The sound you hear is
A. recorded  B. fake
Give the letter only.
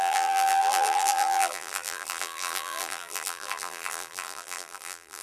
B